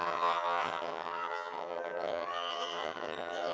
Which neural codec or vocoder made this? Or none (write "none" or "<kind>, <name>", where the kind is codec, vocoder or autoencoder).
vocoder, HiFi-GAN